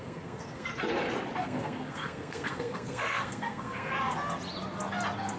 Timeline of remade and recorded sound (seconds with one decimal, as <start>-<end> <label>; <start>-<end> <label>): 0.0-0.7 remade; 0.7-1.4 recorded; 1.4-3.9 remade; 3.9-5.4 recorded

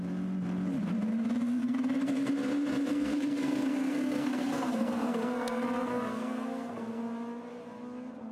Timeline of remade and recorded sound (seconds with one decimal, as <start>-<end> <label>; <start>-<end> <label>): 0.0-1.6 recorded; 1.6-2.3 remade; 2.3-2.9 recorded; 2.9-7.0 remade; 7.0-8.3 recorded

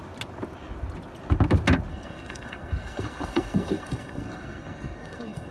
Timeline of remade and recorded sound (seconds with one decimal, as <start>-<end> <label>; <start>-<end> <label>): 0.0-1.9 recorded; 1.9-5.5 remade

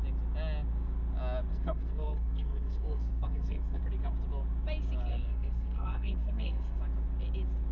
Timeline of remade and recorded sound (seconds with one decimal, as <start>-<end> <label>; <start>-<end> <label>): 0.0-1.5 recorded; 1.5-3.8 remade; 3.8-5.1 recorded; 5.1-6.8 remade; 6.8-7.7 recorded

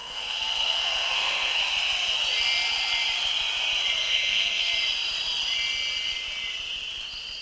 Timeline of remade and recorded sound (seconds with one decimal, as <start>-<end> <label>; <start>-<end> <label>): 0.0-1.6 remade; 1.6-4.0 recorded; 4.0-4.7 remade; 4.7-7.4 recorded

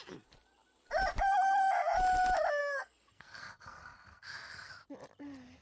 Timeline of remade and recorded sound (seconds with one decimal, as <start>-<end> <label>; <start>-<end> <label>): 0.0-2.6 recorded; 2.6-4.7 remade; 4.7-5.6 recorded

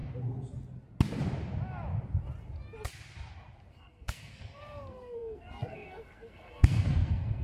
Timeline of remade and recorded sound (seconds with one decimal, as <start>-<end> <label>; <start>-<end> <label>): 0.0-3.7 recorded; 3.7-7.4 remade

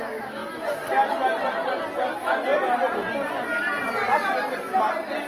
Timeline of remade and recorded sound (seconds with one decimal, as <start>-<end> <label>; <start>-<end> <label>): 0.0-5.3 recorded